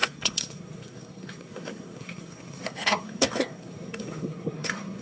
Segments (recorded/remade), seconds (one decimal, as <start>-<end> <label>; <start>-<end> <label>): 0.0-5.0 remade